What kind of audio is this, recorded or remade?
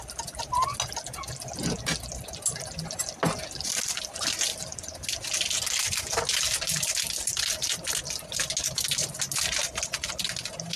recorded